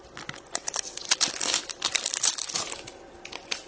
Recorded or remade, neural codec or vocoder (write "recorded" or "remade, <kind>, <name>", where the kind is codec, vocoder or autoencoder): recorded